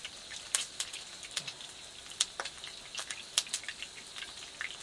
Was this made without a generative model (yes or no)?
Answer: yes